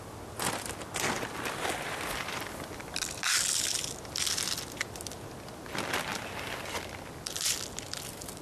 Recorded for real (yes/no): yes